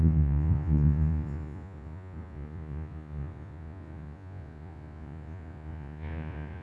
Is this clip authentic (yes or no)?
no